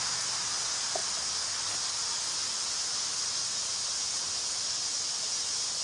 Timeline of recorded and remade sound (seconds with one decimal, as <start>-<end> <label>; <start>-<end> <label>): 0.0-5.8 recorded